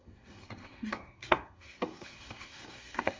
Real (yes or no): no